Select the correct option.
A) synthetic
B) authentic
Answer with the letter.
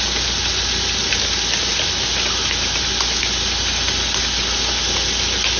B